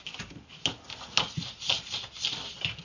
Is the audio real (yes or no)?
yes